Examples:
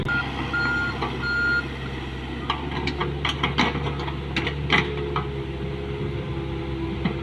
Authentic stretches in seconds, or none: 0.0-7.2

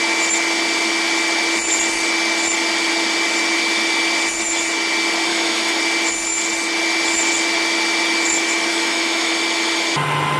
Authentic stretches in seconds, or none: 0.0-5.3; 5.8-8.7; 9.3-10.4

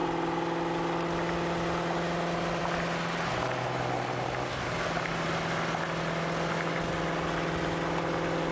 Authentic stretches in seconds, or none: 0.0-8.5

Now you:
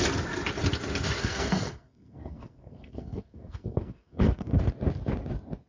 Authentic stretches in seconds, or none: 0.0-1.2; 4.6-5.7

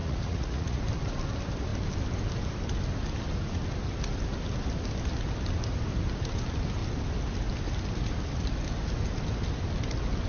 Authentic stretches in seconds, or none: 0.8-10.3

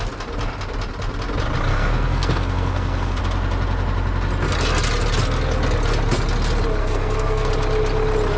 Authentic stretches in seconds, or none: 0.0-1.7; 3.2-6.8; 7.5-8.4

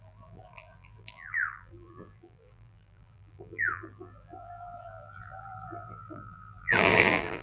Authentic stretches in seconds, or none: none

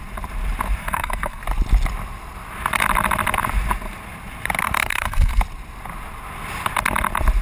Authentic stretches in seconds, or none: 0.0-0.8; 1.4-4.9; 5.4-7.4